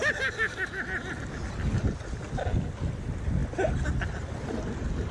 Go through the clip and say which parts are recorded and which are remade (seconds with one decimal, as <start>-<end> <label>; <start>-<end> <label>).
0.0-5.1 recorded